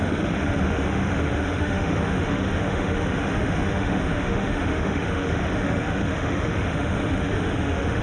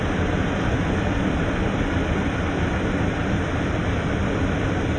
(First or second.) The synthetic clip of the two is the first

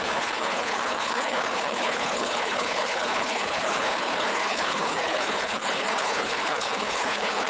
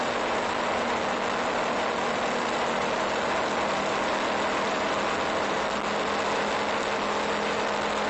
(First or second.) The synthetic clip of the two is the first